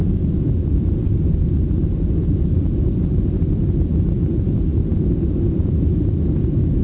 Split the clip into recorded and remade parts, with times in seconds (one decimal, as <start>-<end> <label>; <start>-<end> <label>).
0.0-4.1 remade; 4.1-6.8 recorded